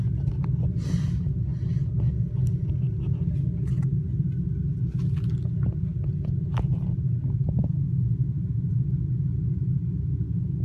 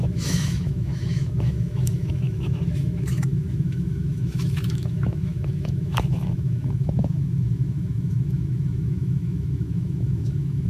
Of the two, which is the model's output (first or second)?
second